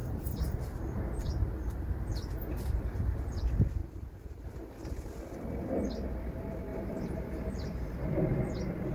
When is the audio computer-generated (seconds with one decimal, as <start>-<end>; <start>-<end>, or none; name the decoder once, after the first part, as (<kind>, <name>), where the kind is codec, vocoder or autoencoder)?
0.0-3.4 (vocoder, BigVGAN v2); 3.8-4.7; 6.7-8.4